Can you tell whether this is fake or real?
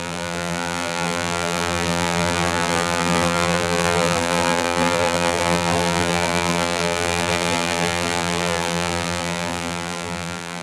fake